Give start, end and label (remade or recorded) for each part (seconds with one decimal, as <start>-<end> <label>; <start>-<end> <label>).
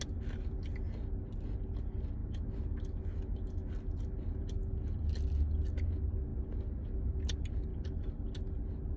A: 0.0-2.2 recorded; 2.2-3.7 remade; 3.7-9.0 recorded